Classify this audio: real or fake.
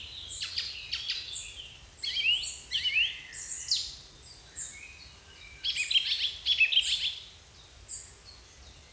real